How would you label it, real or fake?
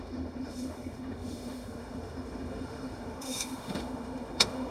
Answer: fake